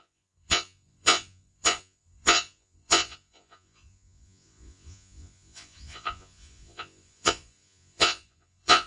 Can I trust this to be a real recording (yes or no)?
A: no